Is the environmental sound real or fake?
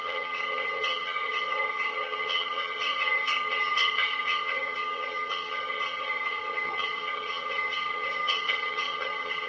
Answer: fake